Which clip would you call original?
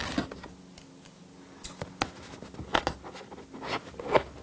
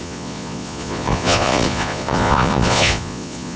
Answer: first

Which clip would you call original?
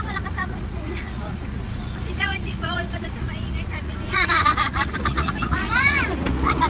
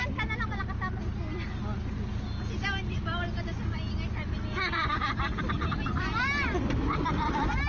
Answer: second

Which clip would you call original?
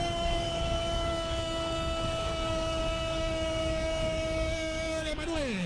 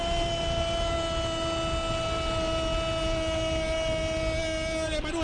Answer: second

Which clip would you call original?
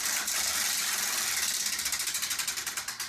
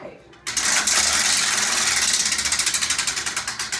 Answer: second